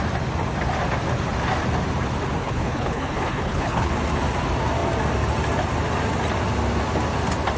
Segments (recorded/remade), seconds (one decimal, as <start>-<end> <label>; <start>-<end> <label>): 0.0-2.4 recorded; 2.4-3.9 remade; 3.9-7.6 recorded